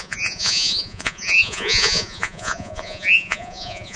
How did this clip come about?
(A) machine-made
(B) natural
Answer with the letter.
A